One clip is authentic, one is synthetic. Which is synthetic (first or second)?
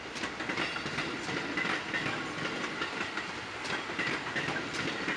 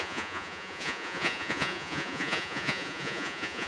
second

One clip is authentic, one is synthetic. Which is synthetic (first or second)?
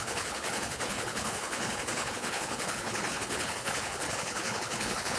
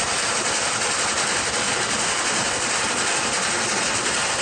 first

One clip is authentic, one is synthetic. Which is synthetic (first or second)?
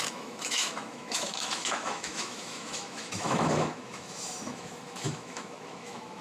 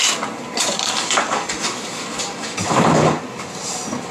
first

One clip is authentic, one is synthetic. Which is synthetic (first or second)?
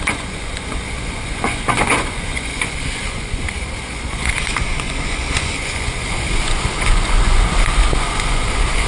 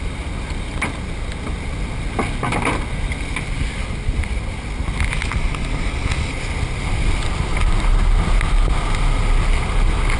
first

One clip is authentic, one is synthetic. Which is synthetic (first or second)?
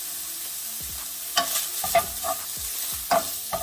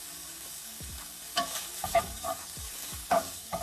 second